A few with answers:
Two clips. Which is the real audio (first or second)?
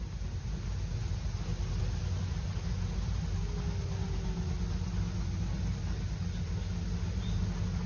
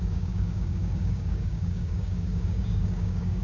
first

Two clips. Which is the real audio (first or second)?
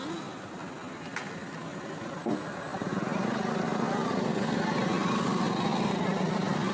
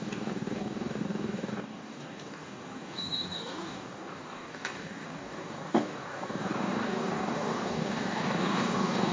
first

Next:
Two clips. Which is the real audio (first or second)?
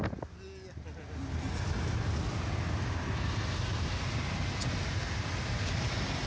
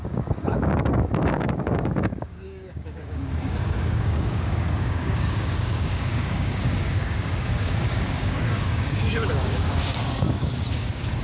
first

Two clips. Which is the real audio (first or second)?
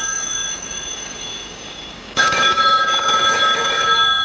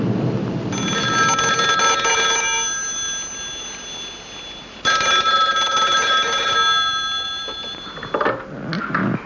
second